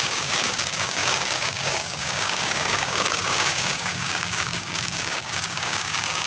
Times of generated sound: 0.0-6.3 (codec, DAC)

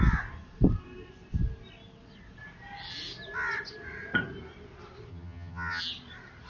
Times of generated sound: 5.1-5.8 (vocoder, HiFi-GAN)

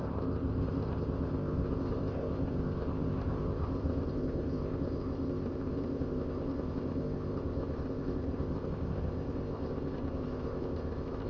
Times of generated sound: 0.0-11.3 (codec, ZipCodec)

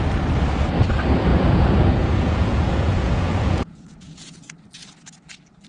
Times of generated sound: 1.3-4.5 (vocoder, Vocos)

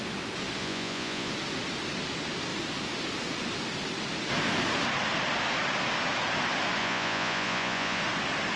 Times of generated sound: 0.6-1.3 (vocoder, Vocos); 6.8-8.0

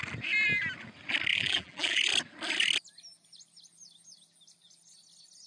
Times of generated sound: 1.3-2.0 (vocoder, BigVGAN v2)

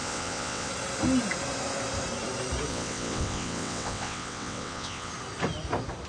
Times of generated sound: 0.0-0.7 (vocoder, WaveNeXt); 2.7-5.1

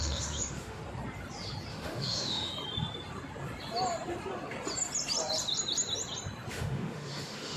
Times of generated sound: 0.0-0.8 (autoencoder, DAC-VAE); 1.7-2.5; 6.5-7.6